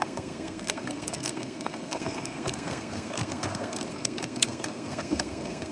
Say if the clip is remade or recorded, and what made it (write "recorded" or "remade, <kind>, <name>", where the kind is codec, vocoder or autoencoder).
remade, codec, SNAC